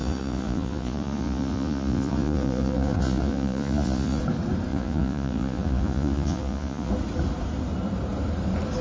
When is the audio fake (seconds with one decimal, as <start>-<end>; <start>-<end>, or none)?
0.0-4.2; 4.7-6.9